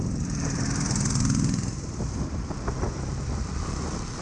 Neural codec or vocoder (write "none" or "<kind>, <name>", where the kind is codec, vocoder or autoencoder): vocoder, BigVGAN v2